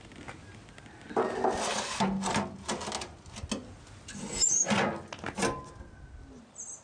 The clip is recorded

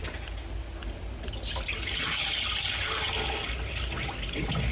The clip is recorded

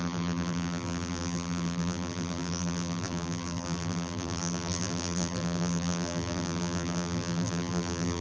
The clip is remade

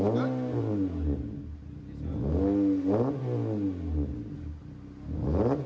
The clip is recorded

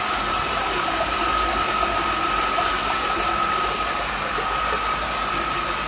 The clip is recorded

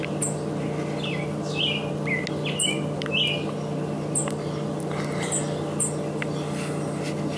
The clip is recorded